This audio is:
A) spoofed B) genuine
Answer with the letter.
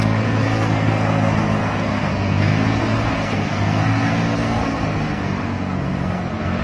A